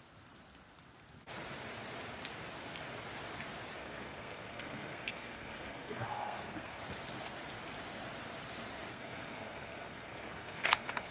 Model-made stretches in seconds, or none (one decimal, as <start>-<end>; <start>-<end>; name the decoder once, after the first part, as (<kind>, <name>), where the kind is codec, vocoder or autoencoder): 3.8-6.8 (codec, SNAC); 8.9-11.1